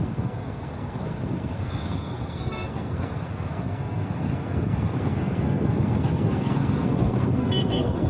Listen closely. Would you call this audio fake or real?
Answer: fake